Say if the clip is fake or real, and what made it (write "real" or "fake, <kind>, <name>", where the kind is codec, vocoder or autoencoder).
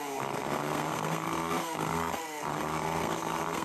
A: fake, codec, SNAC